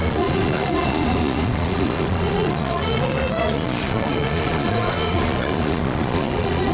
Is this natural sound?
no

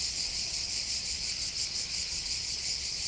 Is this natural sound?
no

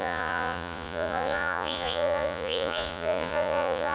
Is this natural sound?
no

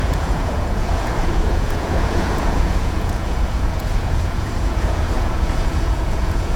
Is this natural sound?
no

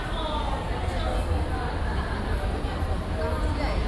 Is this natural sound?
yes